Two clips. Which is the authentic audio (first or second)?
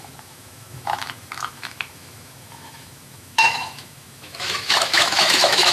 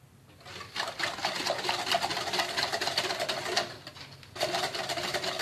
second